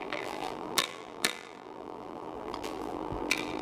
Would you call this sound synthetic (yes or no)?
yes